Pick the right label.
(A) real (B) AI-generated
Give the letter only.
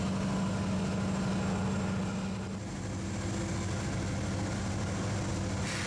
A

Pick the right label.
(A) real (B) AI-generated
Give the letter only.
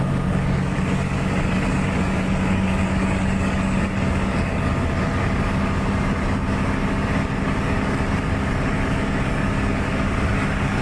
B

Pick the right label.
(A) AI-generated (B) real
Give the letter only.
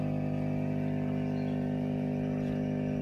A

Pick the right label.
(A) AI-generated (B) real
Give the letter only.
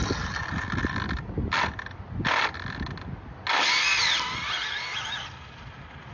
B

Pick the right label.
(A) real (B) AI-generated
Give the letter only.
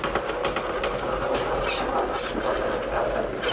A